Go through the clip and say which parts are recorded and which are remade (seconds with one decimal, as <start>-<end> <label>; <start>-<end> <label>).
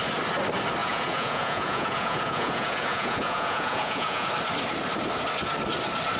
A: 0.0-0.8 recorded; 0.8-4.3 remade; 4.3-6.2 recorded